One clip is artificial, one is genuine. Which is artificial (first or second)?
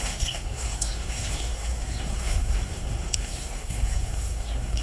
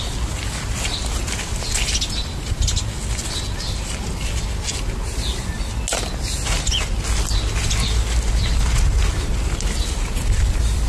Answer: first